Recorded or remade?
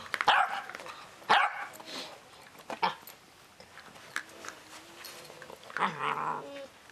recorded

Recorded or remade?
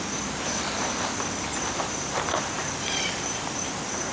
remade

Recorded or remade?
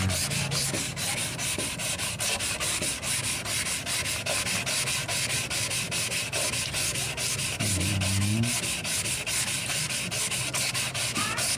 recorded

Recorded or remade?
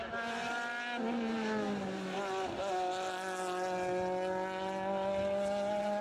recorded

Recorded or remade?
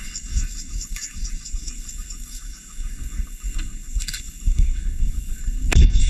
remade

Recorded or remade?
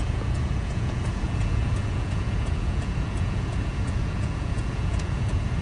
remade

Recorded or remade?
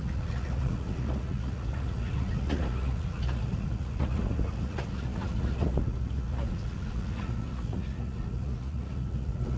remade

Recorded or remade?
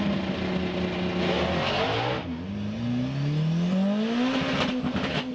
recorded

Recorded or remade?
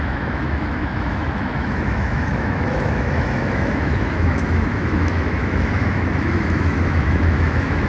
remade